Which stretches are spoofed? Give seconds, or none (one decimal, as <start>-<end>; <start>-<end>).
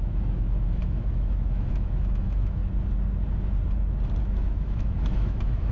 0.0-2.6; 4.2-5.7